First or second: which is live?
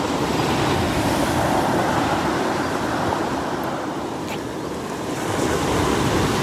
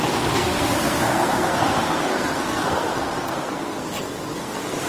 first